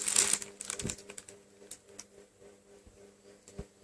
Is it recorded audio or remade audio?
recorded